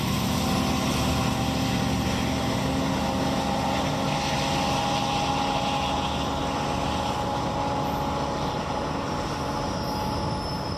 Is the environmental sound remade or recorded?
recorded